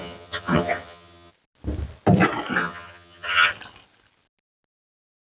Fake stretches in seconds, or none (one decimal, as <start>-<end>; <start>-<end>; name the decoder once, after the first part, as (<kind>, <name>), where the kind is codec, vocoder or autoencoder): 0.0-1.3 (vocoder, HiFi-GAN); 2.6-3.5